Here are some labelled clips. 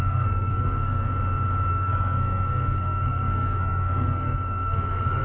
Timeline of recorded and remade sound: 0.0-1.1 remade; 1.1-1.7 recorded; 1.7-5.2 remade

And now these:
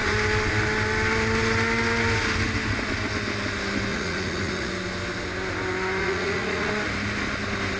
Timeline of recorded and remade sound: 0.0-3.9 recorded; 3.9-4.7 remade; 4.7-6.0 recorded; 6.0-6.7 remade; 6.7-7.8 recorded

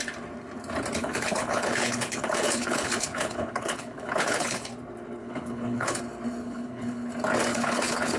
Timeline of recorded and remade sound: 0.0-1.0 recorded; 1.0-4.7 remade; 4.7-5.2 recorded; 5.2-6.0 remade; 6.0-6.4 recorded; 6.4-7.1 remade; 7.1-7.5 recorded; 7.5-8.2 remade

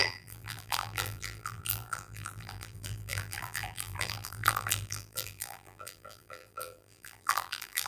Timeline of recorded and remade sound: 0.0-7.9 remade